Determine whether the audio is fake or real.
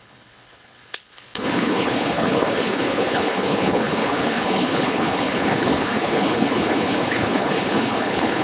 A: fake